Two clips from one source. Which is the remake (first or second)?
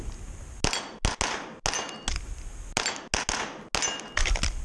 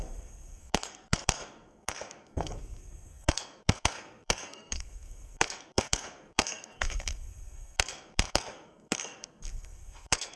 second